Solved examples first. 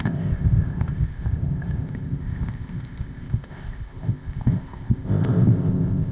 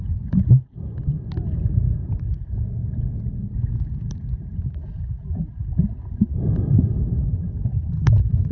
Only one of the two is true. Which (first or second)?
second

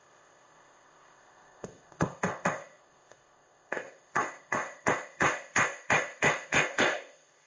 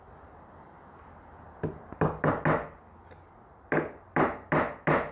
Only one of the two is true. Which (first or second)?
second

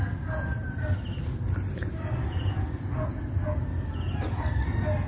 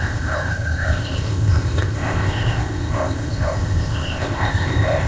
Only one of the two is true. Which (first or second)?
first